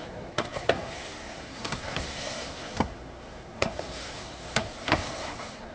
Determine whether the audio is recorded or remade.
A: remade